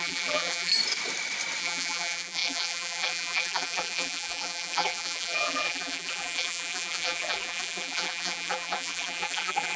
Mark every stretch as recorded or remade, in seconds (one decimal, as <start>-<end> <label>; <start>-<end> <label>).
0.0-0.7 remade; 0.7-1.6 recorded; 1.6-9.8 remade